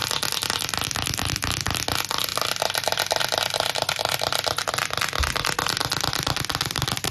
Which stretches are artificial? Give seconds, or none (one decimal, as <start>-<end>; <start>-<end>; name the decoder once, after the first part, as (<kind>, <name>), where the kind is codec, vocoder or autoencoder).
none